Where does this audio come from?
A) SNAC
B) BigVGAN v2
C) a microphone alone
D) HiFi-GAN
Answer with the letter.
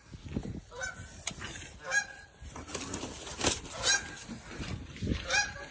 C